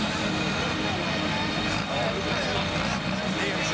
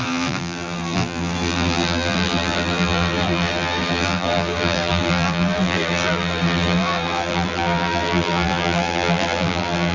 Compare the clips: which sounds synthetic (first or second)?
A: second